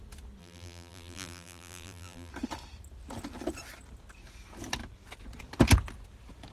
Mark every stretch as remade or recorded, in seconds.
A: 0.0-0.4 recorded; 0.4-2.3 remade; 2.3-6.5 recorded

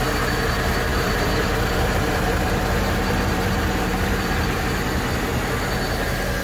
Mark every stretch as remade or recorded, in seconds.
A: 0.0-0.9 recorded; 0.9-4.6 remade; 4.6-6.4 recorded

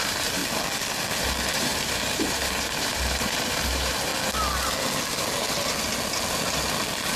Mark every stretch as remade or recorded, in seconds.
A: 0.0-0.4 remade; 0.4-1.2 recorded; 1.2-4.1 remade; 4.1-7.2 recorded

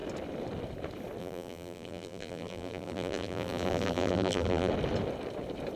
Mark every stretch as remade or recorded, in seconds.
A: 0.0-1.2 recorded; 1.2-4.7 remade; 4.7-5.8 recorded

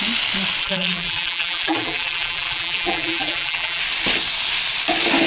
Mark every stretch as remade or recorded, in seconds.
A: 0.0-0.6 recorded; 0.6-3.8 remade; 3.8-5.3 recorded

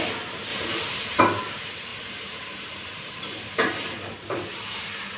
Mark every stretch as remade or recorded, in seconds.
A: 0.0-0.5 recorded; 0.5-1.2 remade; 1.2-1.9 recorded; 1.9-5.2 remade

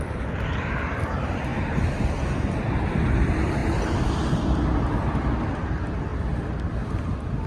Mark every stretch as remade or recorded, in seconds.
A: 0.0-3.6 remade; 3.6-4.4 recorded; 4.4-7.5 remade

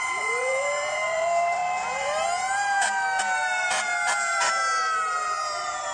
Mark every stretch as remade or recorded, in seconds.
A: 0.0-1.6 remade; 1.6-3.2 recorded; 3.2-5.9 remade